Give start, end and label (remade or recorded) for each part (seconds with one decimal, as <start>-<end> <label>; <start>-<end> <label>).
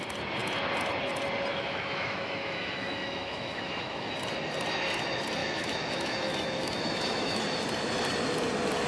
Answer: 0.0-1.5 recorded; 1.5-4.1 remade; 4.1-5.4 recorded; 5.4-7.4 remade; 7.4-8.9 recorded